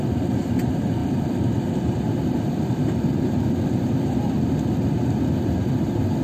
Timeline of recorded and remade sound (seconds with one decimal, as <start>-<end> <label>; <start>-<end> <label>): 0.0-1.0 recorded; 1.0-4.5 remade; 4.5-6.2 recorded